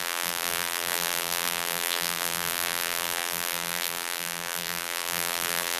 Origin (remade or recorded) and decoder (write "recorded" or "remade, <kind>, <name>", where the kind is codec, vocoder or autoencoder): remade, vocoder, BigVGAN v2